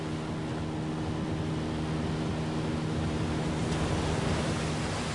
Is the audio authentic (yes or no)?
yes